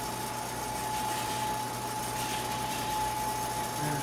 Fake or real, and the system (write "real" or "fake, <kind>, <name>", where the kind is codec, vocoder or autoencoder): real